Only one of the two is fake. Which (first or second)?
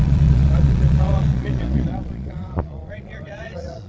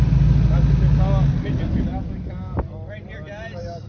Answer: first